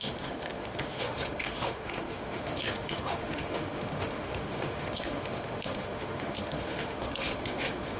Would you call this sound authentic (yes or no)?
no